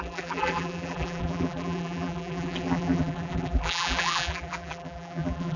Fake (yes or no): yes